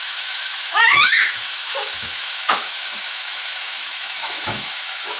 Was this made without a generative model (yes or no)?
no